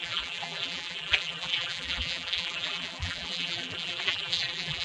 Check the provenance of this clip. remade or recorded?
remade